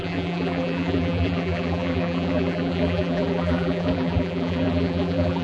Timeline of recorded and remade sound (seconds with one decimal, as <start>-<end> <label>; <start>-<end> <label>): 0.0-5.4 remade